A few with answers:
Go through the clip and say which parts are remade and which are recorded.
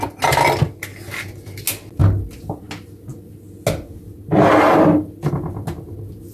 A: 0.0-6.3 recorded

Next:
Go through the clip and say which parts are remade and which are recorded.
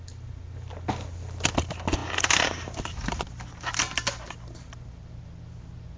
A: 0.0-6.0 recorded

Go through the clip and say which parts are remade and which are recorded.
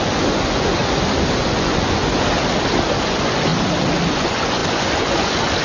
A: 0.0-0.8 remade; 0.8-1.4 recorded; 1.4-2.0 remade; 2.0-2.8 recorded; 2.8-3.5 remade; 3.5-4.1 recorded; 4.1-5.6 remade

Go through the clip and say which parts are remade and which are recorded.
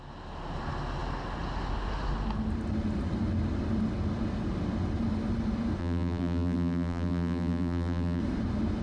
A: 0.0-5.8 recorded; 5.8-8.2 remade; 8.2-8.8 recorded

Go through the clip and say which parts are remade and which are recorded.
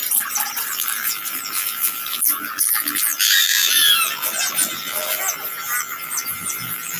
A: 0.0-0.7 recorded; 0.7-7.0 remade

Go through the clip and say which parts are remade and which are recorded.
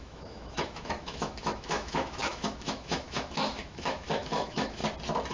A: 0.0-4.8 remade; 4.8-5.3 recorded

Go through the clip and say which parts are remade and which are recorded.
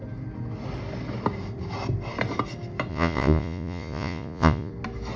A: 0.0-2.9 recorded; 2.9-4.7 remade; 4.7-5.2 recorded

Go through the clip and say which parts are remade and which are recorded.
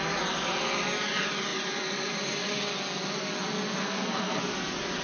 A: 0.0-3.8 recorded; 3.8-4.4 remade; 4.4-5.0 recorded